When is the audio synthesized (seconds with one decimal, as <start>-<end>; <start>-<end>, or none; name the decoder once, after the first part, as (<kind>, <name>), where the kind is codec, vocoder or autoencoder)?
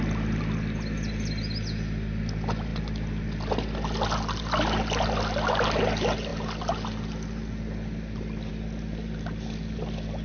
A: none